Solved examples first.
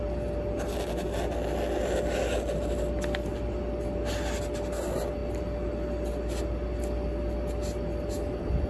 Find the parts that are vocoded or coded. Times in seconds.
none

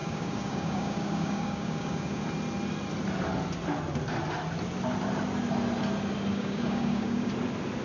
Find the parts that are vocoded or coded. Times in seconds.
0.0-2.2 (codec, DAC); 6.3-7.3